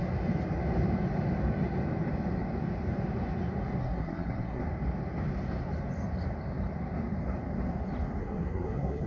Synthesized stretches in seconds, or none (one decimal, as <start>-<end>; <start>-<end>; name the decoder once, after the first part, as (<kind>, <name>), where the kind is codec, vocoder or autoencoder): 3.8-4.6 (codec, SNAC); 8.2-9.1